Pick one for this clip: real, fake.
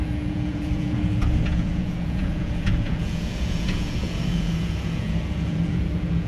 fake